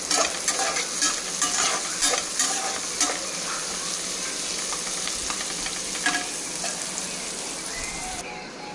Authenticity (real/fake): real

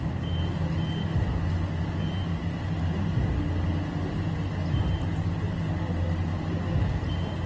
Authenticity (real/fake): real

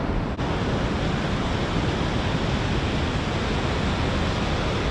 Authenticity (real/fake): real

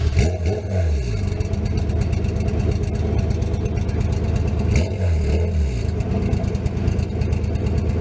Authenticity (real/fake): real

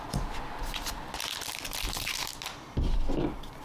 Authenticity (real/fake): real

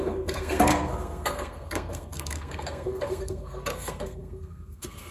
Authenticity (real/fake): fake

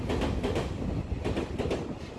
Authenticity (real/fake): real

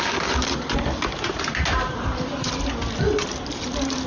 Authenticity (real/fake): real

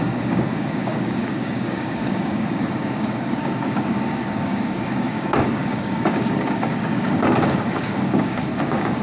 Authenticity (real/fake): fake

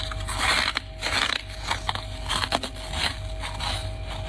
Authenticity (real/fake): real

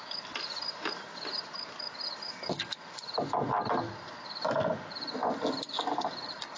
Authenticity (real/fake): real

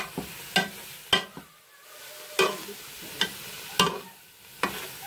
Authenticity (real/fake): real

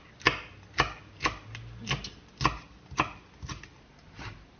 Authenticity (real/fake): real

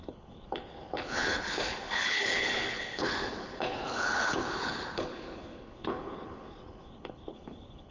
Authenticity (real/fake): fake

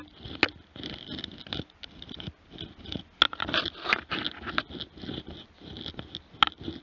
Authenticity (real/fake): real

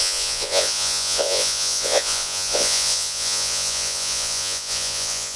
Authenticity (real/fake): fake